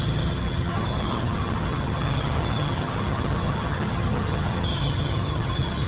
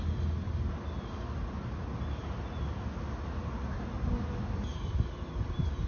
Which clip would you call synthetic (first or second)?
first